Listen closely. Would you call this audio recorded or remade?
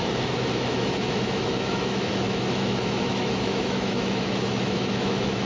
remade